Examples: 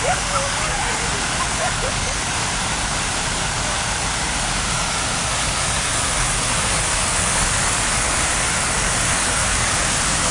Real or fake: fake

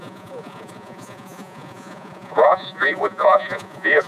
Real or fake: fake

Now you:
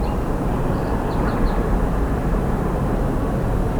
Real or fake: fake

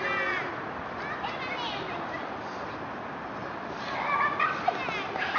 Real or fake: real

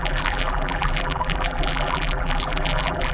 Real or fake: fake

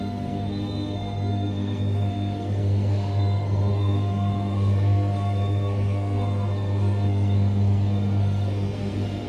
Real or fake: fake